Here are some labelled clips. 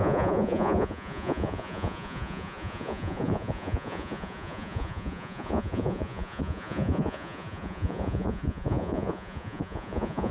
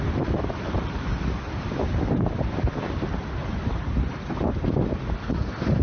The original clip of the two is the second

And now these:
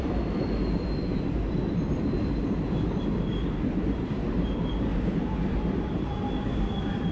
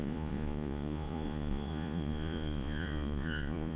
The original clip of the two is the first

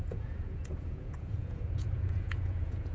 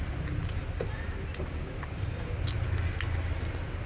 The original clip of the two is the second